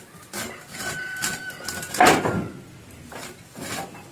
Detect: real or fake real